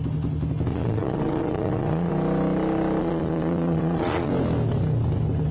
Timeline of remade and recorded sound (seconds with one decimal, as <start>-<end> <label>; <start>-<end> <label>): 0.0-0.7 recorded; 0.7-2.1 remade; 2.1-3.0 recorded; 3.0-4.3 remade; 4.3-5.5 recorded